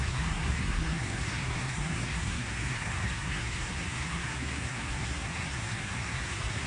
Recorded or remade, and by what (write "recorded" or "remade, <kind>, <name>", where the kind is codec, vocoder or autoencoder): remade, codec, SNAC